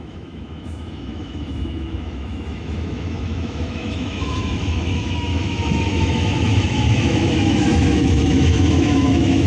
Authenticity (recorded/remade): remade